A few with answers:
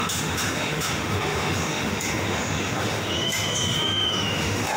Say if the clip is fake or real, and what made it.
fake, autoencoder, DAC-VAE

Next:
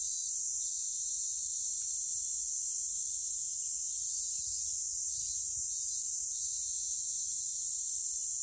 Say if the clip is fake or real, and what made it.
real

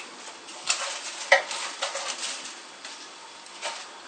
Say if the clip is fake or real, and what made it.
real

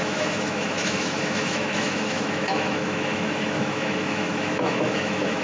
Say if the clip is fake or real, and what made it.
fake, autoencoder, DAC-VAE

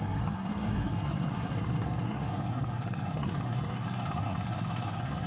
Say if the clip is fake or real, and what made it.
fake, codec, SNAC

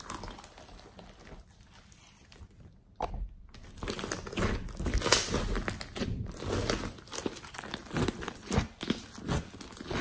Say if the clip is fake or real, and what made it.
real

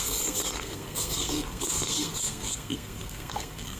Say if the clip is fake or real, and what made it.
fake, codec, SNAC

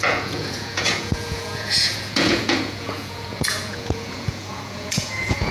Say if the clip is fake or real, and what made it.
fake, vocoder, Vocos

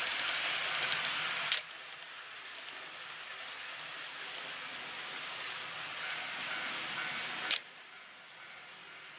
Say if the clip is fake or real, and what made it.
real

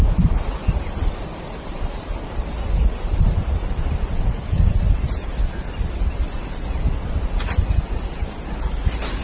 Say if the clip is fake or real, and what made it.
real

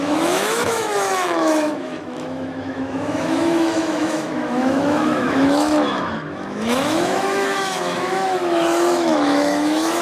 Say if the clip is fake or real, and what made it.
fake, autoencoder, DAC-VAE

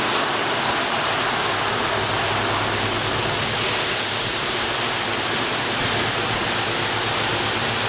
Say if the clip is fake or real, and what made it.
real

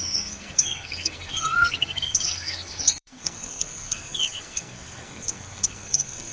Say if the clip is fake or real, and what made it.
fake, codec, SNAC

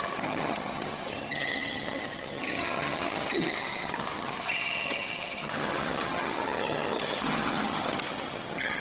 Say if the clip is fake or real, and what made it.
fake, vocoder, HiFi-GAN